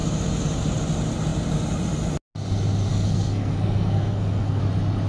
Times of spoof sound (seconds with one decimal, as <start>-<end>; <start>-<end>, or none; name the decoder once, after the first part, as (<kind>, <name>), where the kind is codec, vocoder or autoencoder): 2.9-4.6 (codec, SNAC)